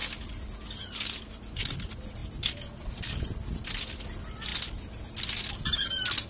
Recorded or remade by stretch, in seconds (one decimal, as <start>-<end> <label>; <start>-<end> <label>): 0.0-6.3 recorded